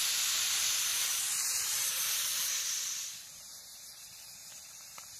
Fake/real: real